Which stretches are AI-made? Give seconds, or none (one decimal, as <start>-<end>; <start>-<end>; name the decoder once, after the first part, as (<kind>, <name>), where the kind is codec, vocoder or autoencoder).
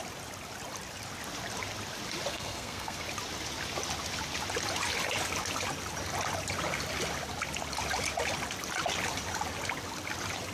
2.3-3.0 (codec, SNAC)